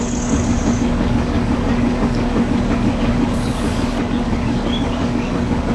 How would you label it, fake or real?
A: fake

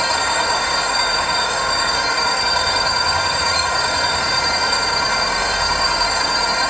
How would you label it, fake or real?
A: fake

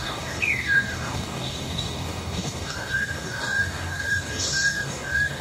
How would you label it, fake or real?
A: fake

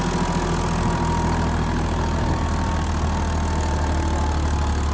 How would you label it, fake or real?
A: real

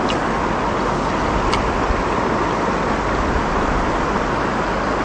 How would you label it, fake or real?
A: real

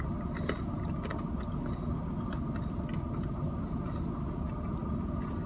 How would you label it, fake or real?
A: real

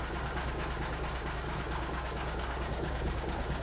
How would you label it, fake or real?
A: fake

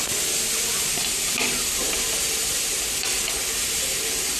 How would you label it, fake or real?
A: real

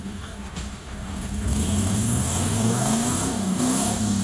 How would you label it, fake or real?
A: fake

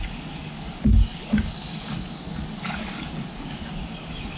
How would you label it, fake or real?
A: fake